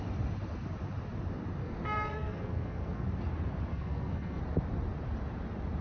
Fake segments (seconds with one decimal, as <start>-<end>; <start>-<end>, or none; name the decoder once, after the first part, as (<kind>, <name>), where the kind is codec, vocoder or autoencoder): 1.6-3.1 (codec, SNAC); 3.7-4.4